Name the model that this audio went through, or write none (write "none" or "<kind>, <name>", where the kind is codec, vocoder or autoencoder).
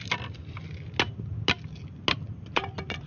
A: none